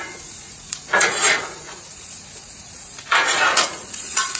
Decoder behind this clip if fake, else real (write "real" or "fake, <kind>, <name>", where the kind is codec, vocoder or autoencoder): fake, vocoder, Vocos